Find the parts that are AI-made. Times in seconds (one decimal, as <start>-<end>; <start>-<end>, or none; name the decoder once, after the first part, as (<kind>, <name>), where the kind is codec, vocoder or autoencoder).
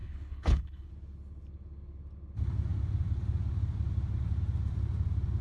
0.0-0.9 (codec, HILCodec)